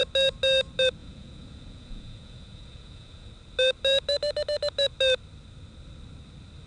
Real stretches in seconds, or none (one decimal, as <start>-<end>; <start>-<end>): 0.0-1.0; 3.3-6.7